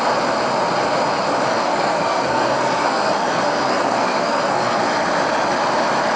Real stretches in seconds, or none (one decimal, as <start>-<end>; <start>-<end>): 0.0-1.5; 4.8-6.2

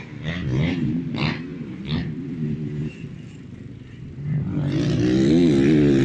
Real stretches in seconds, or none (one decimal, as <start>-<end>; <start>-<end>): 0.0-1.5; 4.4-6.0

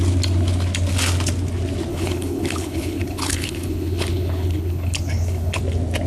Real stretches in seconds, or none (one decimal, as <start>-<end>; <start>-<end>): 0.0-1.9; 5.6-6.1

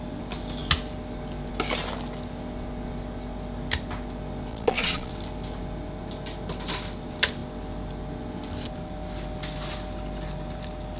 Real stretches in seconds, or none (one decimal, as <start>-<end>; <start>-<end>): 0.0-4.5; 5.1-11.0

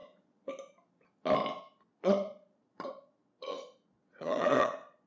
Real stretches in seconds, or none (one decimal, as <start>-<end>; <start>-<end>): 0.5-1.9

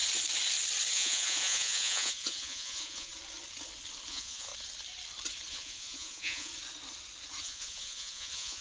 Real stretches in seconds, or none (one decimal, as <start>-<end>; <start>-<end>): 0.0-0.9; 3.1-4.1; 4.5-5.5; 6.5-7.4